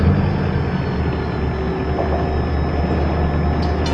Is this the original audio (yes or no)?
yes